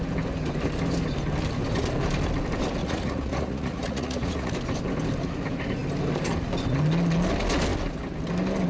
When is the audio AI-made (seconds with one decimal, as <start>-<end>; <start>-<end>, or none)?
2.8-4.5

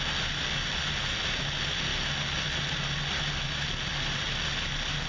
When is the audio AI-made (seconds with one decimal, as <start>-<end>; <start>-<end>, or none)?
none

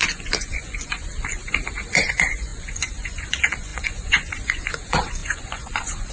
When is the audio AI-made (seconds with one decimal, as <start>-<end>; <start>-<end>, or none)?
0.0-1.1; 1.9-6.1

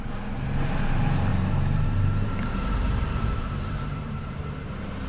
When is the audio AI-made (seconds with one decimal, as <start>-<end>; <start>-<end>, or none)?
1.3-4.4